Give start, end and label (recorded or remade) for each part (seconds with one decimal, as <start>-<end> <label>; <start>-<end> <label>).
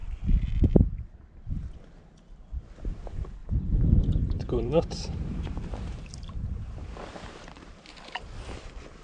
0.0-3.4 recorded; 3.4-8.2 remade; 8.2-9.0 recorded